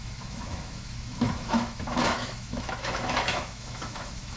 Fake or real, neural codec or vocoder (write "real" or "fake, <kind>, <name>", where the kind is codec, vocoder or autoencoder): fake, autoencoder, DAC-VAE